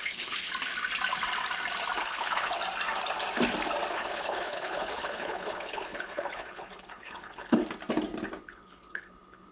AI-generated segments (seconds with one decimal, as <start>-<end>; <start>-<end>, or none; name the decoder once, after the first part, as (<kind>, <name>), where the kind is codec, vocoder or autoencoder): 0.0-0.5 (codec, HILCodec); 2.0-2.6; 3.9-7.6; 8.4-9.5